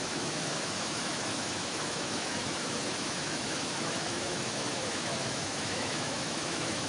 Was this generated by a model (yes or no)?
yes